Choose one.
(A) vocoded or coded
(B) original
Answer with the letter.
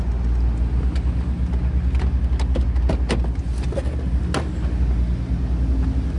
B